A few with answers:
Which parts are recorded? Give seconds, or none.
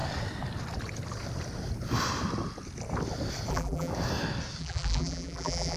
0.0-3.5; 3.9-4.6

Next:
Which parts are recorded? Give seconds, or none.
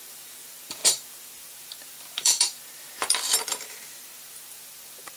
none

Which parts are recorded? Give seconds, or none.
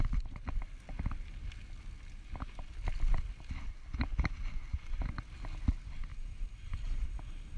0.0-6.1